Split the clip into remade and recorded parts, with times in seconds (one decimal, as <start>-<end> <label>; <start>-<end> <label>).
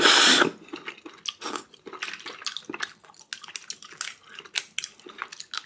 0.0-5.7 recorded